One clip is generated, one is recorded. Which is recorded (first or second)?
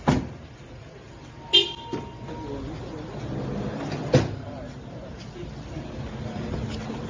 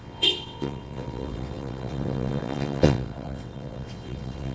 first